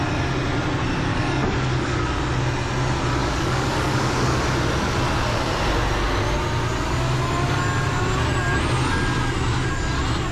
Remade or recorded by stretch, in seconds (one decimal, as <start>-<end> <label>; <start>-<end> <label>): 0.0-1.1 recorded; 1.1-2.1 remade; 2.1-3.2 recorded; 3.2-4.4 remade; 4.4-10.3 recorded

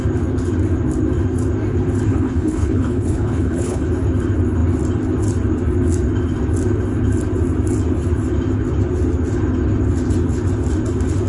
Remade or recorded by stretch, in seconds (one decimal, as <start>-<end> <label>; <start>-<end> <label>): 0.0-2.1 recorded; 2.1-3.9 remade; 3.9-11.3 recorded